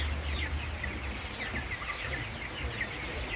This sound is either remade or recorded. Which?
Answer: recorded